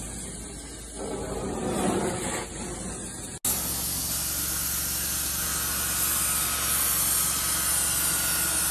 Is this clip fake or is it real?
real